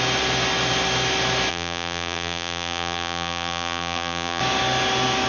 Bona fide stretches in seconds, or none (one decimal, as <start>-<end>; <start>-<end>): 0.0-1.5; 4.4-5.3